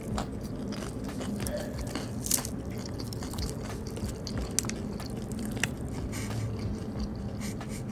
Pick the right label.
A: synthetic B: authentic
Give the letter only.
B